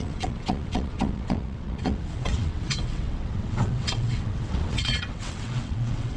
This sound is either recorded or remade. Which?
remade